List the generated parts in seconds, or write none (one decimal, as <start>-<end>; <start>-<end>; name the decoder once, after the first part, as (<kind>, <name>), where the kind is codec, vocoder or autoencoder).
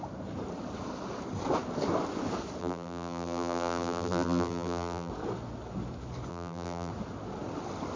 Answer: 2.6-5.1 (vocoder, BigVGAN v2); 6.3-6.9